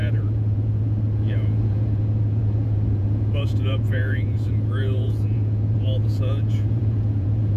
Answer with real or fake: fake